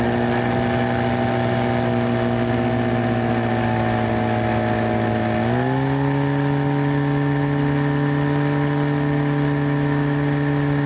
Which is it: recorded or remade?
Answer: recorded